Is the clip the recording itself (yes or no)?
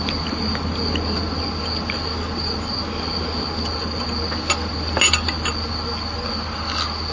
yes